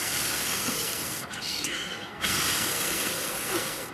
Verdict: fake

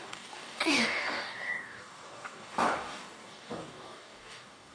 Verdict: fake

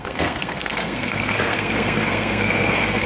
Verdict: fake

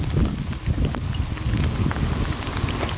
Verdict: real